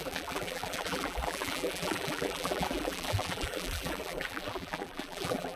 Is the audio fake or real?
fake